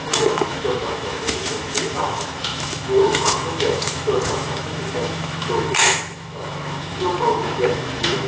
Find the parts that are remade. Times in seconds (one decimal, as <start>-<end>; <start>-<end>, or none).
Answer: 0.0-8.3